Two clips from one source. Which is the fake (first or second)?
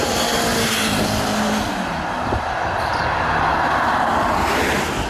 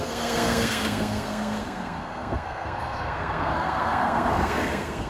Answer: second